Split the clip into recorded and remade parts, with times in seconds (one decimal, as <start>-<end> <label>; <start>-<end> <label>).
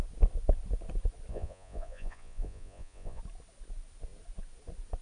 0.0-1.3 recorded; 1.3-3.2 remade; 3.2-5.0 recorded